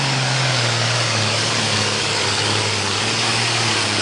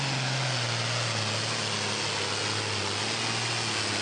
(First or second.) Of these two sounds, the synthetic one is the first